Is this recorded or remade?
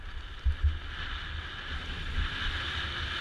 recorded